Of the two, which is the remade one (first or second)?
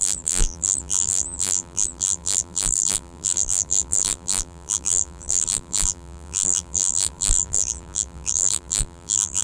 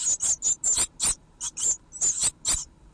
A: first